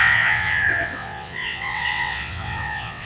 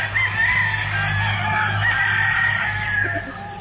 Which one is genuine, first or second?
second